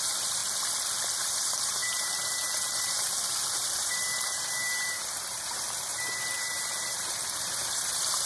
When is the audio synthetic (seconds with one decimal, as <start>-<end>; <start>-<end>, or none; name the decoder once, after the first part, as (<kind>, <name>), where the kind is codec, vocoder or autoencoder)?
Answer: 0.0-0.4 (vocoder, BigVGAN v2); 1.2-8.3